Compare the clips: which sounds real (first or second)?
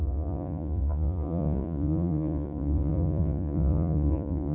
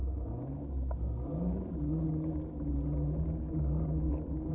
second